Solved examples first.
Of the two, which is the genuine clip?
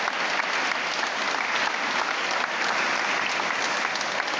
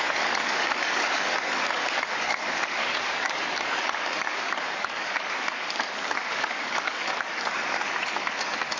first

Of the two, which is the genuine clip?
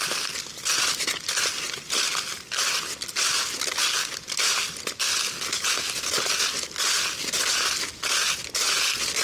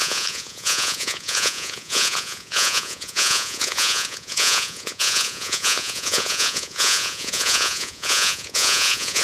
first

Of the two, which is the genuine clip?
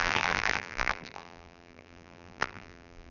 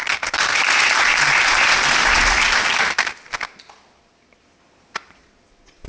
second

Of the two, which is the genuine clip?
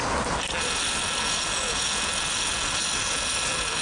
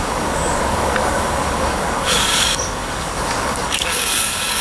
first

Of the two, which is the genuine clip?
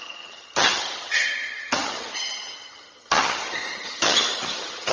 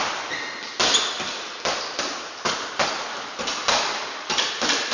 second